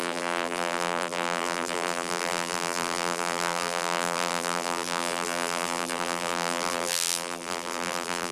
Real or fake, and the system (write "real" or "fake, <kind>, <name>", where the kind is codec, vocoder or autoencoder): fake, vocoder, BigVGAN v2